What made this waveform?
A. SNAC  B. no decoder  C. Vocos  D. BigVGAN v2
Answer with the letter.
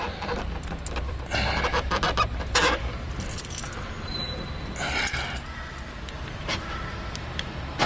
B